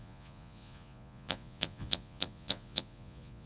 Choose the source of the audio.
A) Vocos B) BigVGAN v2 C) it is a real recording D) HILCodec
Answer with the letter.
A